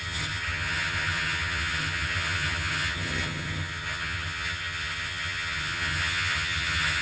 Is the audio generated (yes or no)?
yes